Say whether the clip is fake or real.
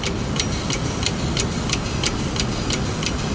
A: fake